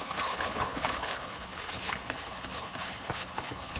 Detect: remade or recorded remade